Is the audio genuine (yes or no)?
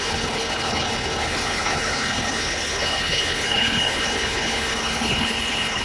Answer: no